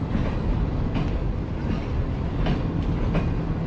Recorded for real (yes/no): yes